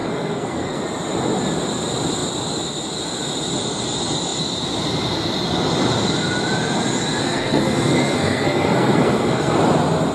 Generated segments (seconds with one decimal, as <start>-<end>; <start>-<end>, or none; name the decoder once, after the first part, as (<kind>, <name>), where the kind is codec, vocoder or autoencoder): 0.0-0.8 (codec, SNAC); 7.2-9.6